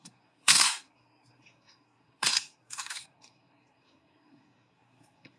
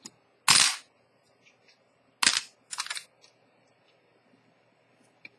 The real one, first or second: second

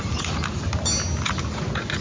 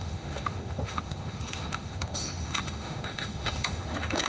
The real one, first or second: first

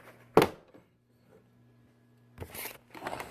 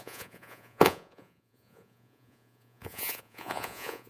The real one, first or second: first